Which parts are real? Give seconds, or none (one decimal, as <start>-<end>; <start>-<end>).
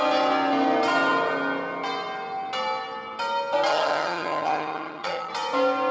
0.0-3.7; 5.3-5.9